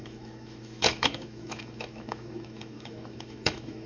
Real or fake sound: fake